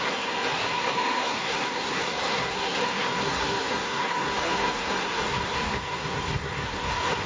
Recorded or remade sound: remade